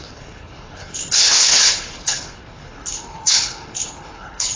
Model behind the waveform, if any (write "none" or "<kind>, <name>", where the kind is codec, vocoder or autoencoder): codec, HILCodec